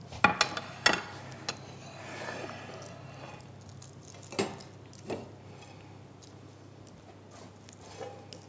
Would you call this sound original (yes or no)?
yes